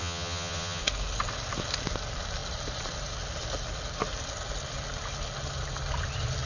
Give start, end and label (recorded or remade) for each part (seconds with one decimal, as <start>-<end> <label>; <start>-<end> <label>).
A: 0.0-0.8 remade; 0.8-6.5 recorded

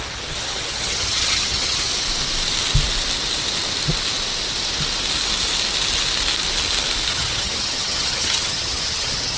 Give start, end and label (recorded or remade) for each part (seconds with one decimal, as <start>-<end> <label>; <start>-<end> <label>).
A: 0.0-1.9 remade; 1.9-7.1 recorded; 7.1-9.4 remade

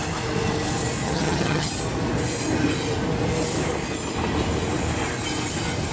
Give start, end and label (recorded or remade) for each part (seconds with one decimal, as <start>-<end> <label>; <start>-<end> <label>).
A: 0.0-1.0 recorded; 1.0-1.7 remade; 1.7-5.9 recorded

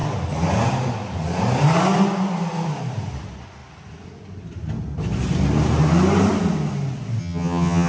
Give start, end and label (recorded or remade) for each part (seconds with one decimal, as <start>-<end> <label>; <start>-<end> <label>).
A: 0.0-7.2 recorded; 7.2-7.9 remade

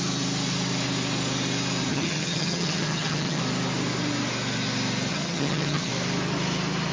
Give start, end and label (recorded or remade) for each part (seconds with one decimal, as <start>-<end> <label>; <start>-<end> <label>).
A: 0.0-1.9 recorded; 1.9-3.4 remade; 3.4-5.1 recorded; 5.1-5.9 remade; 5.9-6.9 recorded

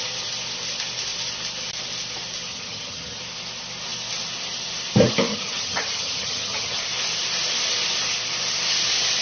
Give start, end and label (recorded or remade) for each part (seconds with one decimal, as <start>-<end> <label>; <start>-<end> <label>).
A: 0.0-2.5 recorded; 2.5-3.2 remade; 3.2-5.3 recorded; 5.3-6.8 remade; 6.8-9.2 recorded

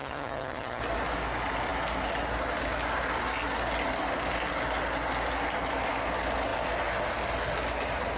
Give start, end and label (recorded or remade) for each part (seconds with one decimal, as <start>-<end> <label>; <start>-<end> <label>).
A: 0.0-0.8 remade; 0.8-8.2 recorded